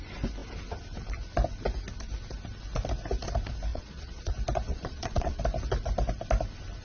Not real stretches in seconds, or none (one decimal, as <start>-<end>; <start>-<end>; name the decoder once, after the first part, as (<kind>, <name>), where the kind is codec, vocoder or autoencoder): 3.7-4.3 (vocoder, Vocos); 4.7-5.4